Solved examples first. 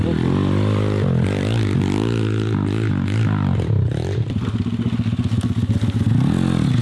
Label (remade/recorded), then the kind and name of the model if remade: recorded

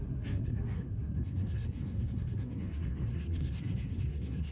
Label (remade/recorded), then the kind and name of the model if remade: remade, codec, SNAC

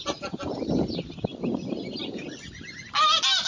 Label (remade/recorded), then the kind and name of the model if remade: recorded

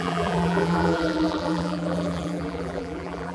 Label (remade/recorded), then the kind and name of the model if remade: remade, vocoder, BigVGAN v2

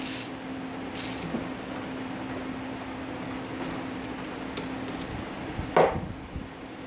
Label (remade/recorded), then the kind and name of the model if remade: recorded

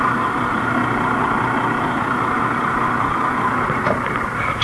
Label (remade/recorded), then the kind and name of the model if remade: remade, vocoder, BigVGAN v2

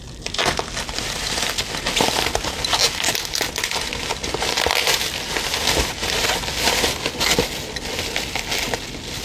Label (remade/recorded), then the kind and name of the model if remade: recorded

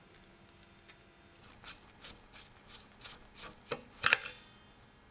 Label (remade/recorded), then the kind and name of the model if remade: recorded